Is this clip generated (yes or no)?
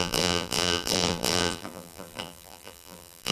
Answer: yes